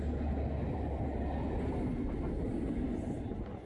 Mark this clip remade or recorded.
recorded